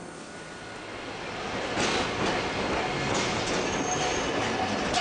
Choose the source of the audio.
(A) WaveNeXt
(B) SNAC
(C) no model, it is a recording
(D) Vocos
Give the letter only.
C